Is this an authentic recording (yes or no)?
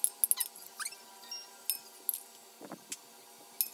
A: yes